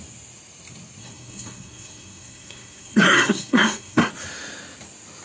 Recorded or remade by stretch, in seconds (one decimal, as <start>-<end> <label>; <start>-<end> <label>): 0.0-1.0 recorded; 1.0-4.1 remade; 4.1-5.2 recorded